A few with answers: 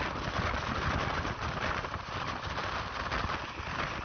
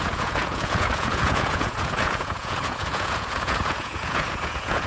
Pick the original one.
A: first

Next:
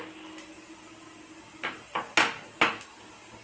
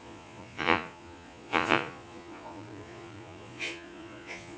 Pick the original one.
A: first